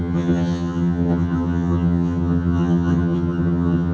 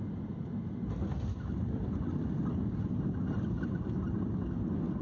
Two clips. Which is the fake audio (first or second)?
first